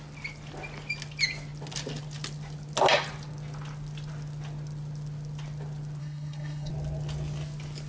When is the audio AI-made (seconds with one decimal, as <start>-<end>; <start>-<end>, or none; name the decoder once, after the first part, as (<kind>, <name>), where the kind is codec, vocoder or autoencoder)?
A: 6.0-6.7 (codec, SNAC)